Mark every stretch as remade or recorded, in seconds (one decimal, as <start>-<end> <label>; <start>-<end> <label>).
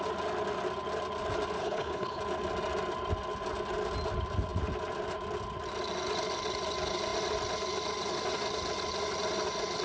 0.0-1.6 recorded; 1.6-2.2 remade; 2.2-9.8 recorded